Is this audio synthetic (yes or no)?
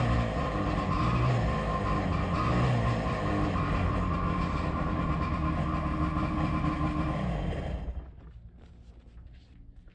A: no